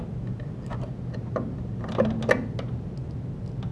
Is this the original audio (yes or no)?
yes